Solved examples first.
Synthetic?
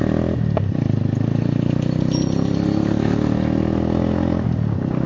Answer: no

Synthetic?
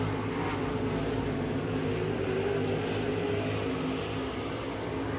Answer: no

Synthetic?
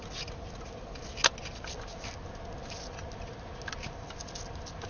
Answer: no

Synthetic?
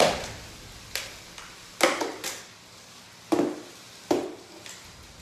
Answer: no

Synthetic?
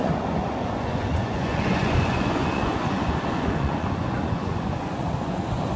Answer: yes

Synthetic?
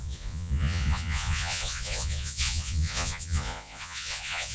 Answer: yes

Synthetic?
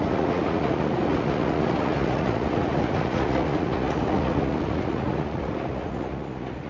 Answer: yes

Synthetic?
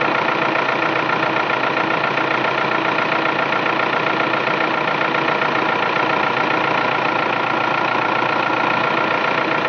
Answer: no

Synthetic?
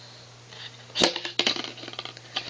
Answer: no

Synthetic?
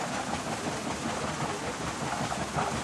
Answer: no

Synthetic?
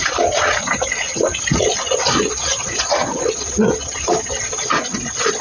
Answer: yes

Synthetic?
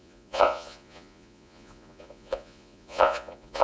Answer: yes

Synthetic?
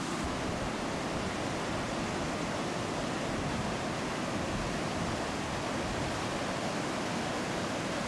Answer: no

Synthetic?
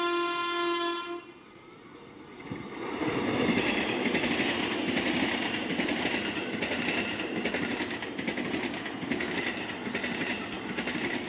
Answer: no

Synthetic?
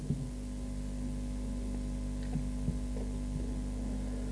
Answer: no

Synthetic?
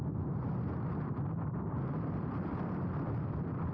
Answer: no